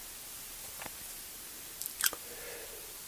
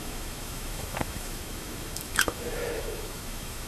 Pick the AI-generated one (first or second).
second